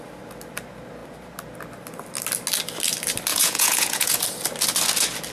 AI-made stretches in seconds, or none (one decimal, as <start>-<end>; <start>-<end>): 3.3-4.2